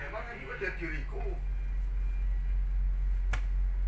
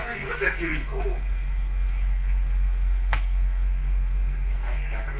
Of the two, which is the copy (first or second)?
second